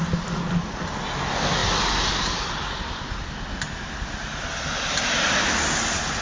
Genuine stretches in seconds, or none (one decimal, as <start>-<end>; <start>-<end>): 0.0-6.2